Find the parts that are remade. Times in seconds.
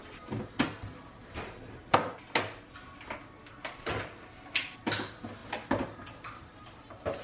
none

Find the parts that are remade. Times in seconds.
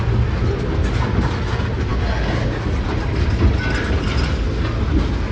none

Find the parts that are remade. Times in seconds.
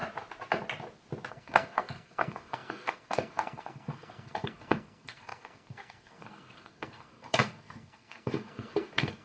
1.3-9.2 (codec, SNAC)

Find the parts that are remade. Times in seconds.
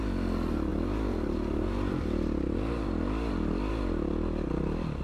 none